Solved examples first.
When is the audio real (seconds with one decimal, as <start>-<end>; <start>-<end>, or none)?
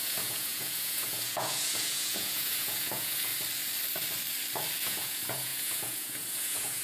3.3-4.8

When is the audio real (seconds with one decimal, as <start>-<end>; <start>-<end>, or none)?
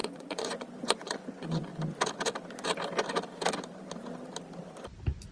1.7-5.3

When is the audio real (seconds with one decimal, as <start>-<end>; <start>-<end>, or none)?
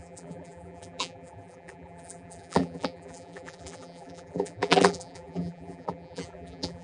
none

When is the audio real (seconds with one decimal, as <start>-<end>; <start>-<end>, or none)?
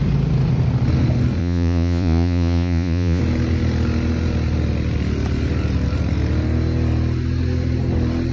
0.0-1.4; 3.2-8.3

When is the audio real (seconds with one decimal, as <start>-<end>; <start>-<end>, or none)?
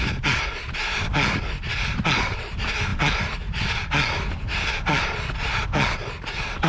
0.0-6.7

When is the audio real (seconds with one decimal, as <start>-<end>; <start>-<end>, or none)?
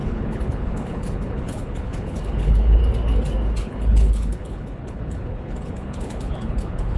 2.8-3.6